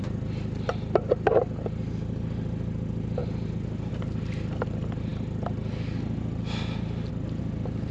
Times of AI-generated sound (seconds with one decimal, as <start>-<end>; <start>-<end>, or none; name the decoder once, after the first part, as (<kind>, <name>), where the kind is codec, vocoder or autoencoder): none